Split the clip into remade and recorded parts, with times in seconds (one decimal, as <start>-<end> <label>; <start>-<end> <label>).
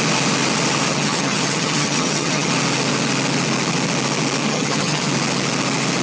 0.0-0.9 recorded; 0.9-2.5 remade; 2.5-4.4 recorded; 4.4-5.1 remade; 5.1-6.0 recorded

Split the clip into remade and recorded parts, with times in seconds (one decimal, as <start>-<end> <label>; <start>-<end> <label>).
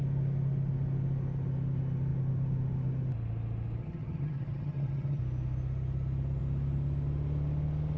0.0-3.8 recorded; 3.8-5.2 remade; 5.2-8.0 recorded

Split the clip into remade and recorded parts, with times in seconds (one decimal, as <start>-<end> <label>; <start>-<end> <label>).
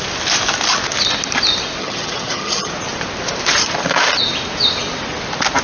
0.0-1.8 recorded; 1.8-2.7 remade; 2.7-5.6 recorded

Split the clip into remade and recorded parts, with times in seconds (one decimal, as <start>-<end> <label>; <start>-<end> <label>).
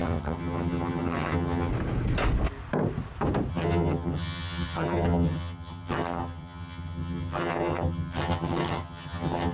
0.0-1.7 remade; 1.7-3.5 recorded; 3.5-9.5 remade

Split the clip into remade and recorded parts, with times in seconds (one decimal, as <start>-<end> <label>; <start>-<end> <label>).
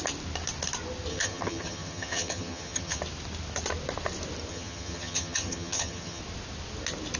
0.0-1.1 recorded; 1.1-3.0 remade; 3.0-4.5 recorded; 4.5-6.2 remade; 6.2-7.2 recorded